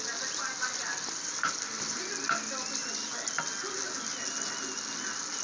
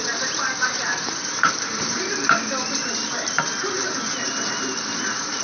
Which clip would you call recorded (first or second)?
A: first